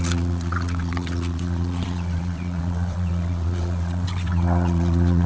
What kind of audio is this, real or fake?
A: fake